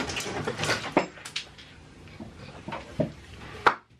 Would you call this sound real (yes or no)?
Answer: yes